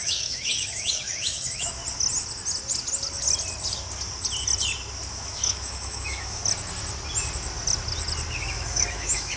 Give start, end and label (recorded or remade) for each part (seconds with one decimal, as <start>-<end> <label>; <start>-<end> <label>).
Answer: 0.0-1.8 remade; 1.8-5.1 recorded; 5.1-6.4 remade; 6.4-8.4 recorded; 8.4-9.4 remade